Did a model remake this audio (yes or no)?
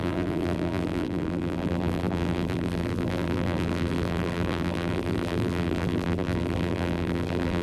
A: yes